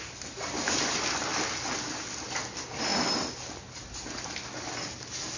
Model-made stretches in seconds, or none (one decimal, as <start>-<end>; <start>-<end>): none